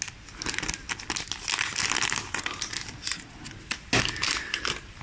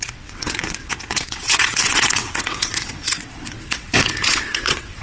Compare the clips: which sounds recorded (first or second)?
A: first